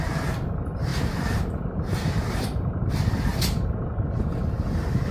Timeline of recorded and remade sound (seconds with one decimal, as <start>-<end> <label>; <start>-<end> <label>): 0.0-0.9 recorded; 0.9-2.9 remade; 2.9-3.3 recorded; 3.3-3.9 remade; 3.9-5.1 recorded